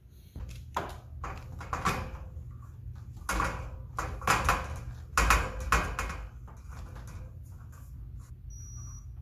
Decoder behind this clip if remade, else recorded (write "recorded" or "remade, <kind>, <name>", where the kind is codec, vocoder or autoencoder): recorded